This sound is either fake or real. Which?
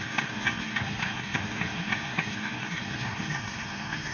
fake